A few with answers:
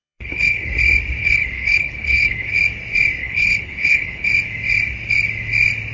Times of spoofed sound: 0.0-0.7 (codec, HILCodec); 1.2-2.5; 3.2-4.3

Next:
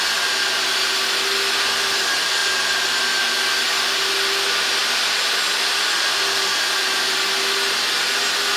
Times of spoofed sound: none

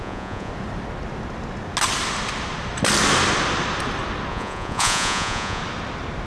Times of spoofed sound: 0.0-0.5 (vocoder, Vocos); 4.3-5.6

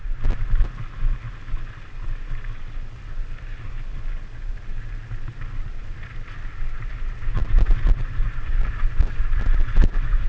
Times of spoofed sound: none

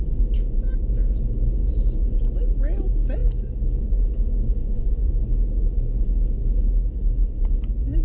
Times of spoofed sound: 4.6-5.1 (vocoder, Vocos)